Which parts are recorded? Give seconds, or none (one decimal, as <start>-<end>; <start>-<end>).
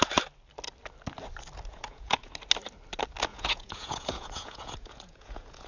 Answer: 0.0-1.7; 2.3-3.3